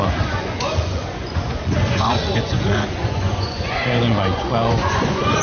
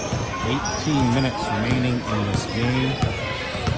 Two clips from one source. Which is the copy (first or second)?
first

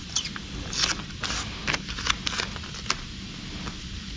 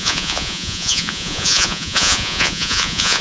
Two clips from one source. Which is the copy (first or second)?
second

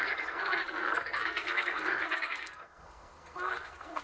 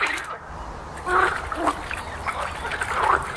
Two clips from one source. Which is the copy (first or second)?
first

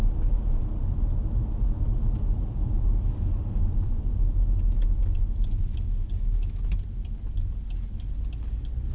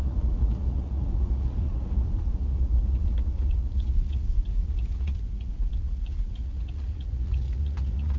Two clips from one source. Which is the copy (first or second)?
second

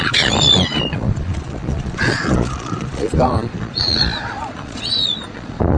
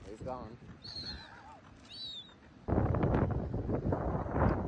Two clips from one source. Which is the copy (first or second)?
first